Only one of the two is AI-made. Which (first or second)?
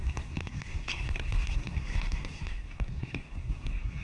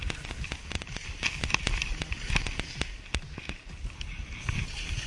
first